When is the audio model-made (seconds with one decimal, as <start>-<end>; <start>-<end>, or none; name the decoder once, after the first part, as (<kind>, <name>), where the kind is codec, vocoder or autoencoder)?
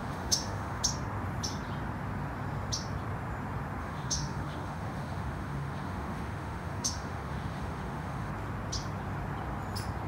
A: 0.0-0.8 (autoencoder, DAC-VAE); 3.8-8.3